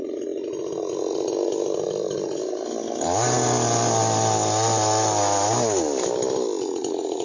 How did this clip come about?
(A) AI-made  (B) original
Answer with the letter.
B